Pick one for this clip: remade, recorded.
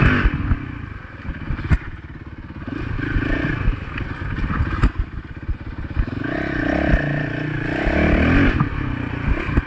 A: recorded